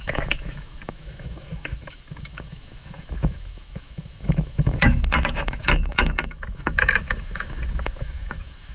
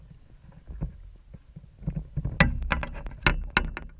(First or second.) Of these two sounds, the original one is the second